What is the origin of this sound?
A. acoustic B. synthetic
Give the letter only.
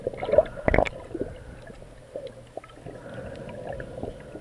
A